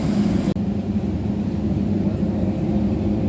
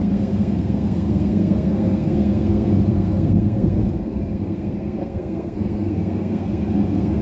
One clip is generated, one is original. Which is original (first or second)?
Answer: first